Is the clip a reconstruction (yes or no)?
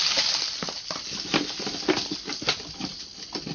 no